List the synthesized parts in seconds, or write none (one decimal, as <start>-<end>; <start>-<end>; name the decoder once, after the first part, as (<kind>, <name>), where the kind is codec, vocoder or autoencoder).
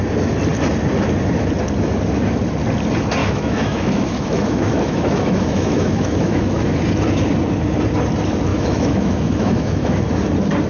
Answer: 3.2-6.8 (autoencoder, DAC-VAE); 8.5-10.0